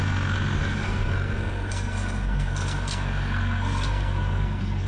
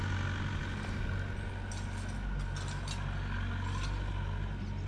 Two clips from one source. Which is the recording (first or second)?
second